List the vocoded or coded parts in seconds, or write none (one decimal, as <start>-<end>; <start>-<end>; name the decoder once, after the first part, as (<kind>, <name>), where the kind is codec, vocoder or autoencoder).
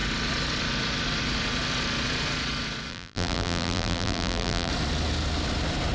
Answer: 2.9-4.7 (vocoder, BigVGAN v2)